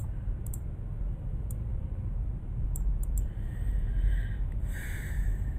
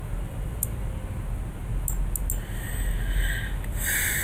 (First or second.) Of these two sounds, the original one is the second